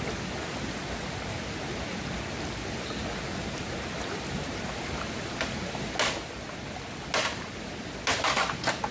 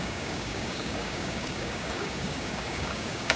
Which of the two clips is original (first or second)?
first